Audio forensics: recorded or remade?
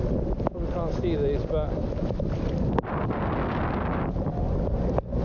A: recorded